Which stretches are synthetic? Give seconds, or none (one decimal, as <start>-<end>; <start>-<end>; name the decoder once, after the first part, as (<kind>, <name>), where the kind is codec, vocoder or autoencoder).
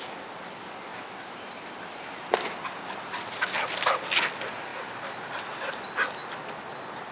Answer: none